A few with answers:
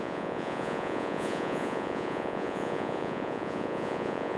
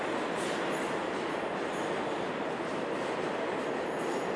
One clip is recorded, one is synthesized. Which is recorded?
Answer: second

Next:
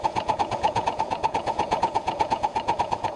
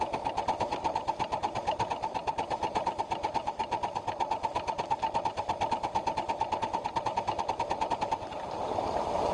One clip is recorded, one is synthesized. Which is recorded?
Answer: second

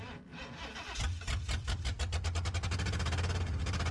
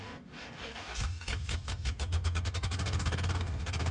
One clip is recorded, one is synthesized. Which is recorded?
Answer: first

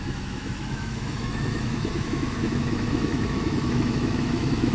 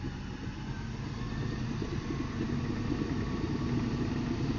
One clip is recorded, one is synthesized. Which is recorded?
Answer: second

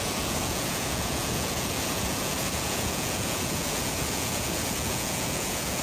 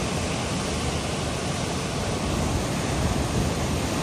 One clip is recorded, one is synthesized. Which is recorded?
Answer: second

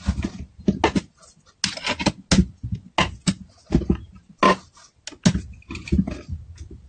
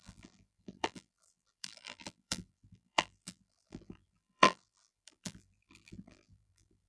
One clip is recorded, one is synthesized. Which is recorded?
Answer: first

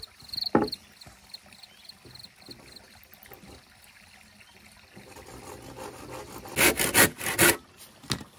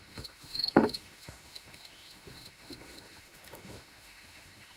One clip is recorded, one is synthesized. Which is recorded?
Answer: first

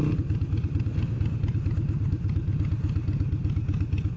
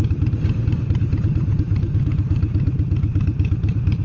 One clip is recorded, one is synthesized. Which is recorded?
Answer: first